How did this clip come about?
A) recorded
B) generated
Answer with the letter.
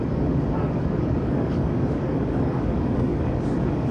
B